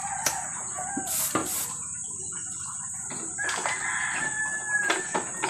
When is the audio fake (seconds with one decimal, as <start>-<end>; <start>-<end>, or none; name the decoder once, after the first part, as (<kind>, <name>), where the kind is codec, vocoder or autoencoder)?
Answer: none

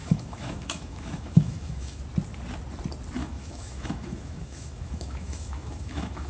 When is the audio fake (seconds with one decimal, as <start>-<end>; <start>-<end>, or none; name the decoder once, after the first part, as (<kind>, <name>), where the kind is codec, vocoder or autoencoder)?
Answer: 0.0-2.0 (autoencoder, DAC-VAE); 3.2-6.3

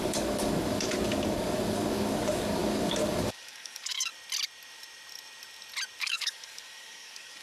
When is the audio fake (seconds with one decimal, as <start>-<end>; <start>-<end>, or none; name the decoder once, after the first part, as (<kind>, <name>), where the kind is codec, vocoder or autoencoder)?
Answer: 0.0-4.1 (codec, DAC); 6.0-7.4

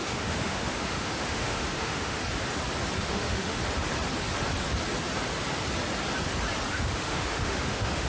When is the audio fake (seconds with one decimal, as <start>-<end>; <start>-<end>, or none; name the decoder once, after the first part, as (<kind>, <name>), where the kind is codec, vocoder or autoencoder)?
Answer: 0.0-2.2 (autoencoder, DAC-VAE); 3.0-3.6; 6.7-8.1